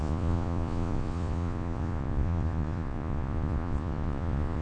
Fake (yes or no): yes